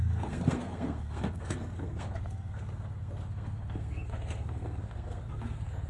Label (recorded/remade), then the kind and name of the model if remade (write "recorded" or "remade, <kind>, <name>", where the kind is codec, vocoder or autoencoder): remade, codec, SNAC